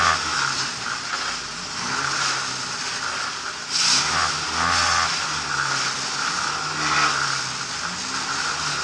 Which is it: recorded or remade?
recorded